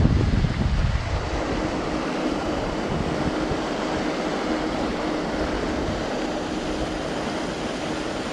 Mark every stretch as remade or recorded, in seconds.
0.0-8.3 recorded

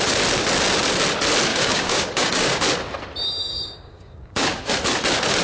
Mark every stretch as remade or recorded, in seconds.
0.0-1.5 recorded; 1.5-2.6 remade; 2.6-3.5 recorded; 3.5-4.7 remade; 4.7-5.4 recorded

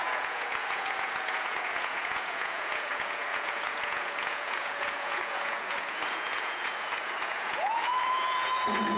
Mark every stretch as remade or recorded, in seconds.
0.0-9.0 remade